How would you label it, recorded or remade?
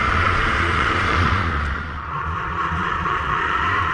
remade